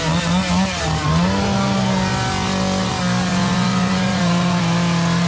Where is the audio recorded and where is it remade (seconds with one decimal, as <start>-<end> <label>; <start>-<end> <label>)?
0.0-3.3 recorded; 3.3-4.6 remade; 4.6-5.3 recorded